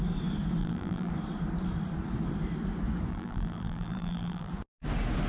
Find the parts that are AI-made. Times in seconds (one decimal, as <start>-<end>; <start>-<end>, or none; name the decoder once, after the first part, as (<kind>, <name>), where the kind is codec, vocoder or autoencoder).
0.6-1.1 (vocoder, BigVGAN v2); 3.1-4.5